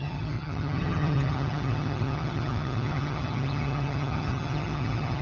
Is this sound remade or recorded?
remade